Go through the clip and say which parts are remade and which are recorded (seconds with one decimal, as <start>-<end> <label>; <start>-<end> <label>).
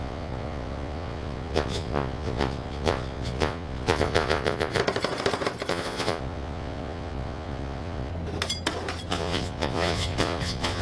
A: 0.0-4.8 remade; 4.8-5.7 recorded; 5.7-8.1 remade; 8.1-9.1 recorded; 9.1-10.8 remade